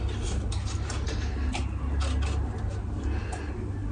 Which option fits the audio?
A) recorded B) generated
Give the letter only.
A